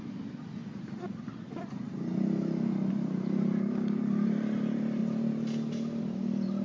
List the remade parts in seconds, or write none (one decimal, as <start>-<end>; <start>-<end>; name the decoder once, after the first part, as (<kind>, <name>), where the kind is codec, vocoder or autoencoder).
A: 0.0-0.6 (vocoder, BigVGAN v2); 2.9-5.0; 6.0-6.6